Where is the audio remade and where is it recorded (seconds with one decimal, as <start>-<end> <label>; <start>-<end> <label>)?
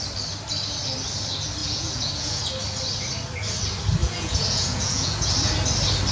0.0-1.6 recorded; 1.6-2.4 remade; 2.4-4.0 recorded; 4.0-5.3 remade; 5.3-6.1 recorded